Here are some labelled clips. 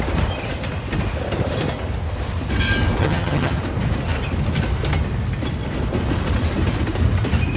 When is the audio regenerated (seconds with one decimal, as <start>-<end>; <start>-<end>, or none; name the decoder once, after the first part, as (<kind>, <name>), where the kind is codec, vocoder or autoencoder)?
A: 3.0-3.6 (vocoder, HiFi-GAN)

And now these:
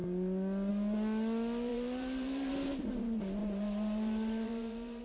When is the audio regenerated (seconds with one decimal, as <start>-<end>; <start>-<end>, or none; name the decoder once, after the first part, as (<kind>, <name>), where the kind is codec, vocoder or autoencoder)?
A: 1.7-2.5 (vocoder, BigVGAN v2); 3.4-5.0

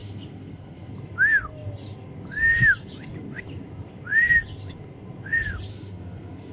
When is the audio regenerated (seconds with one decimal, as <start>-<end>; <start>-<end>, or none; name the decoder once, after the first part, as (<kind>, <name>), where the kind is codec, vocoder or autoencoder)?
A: 0.0-0.9 (codec, SNAC); 5.7-6.5

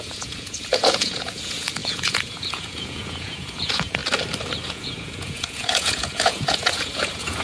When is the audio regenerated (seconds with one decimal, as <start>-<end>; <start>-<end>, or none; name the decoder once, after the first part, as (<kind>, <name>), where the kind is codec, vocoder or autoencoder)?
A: 0.0-4.0 (vocoder, Vocos); 4.7-7.4